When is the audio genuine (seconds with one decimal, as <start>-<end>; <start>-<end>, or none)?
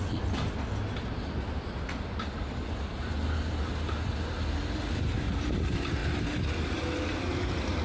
0.0-6.0; 6.8-7.8